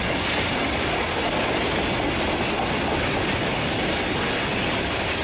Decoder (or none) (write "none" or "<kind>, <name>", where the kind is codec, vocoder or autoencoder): none